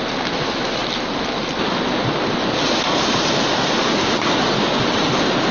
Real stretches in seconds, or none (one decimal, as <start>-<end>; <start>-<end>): 0.0-5.5